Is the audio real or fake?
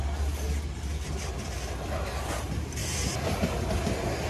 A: real